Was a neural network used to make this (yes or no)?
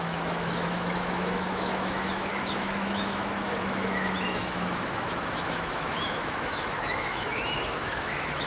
yes